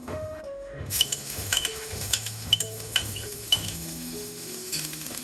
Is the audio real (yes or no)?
no